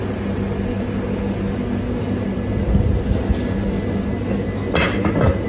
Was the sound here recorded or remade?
recorded